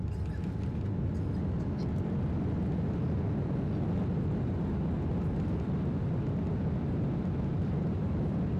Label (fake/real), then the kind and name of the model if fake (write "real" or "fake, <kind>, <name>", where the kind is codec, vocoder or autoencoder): real